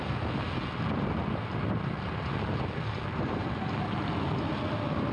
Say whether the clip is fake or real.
real